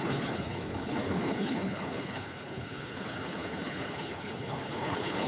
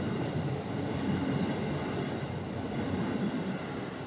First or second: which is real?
second